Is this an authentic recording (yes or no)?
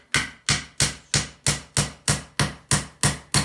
yes